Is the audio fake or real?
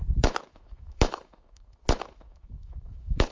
fake